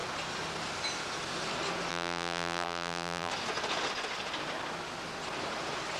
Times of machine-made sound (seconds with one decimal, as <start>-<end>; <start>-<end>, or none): 1.9-3.3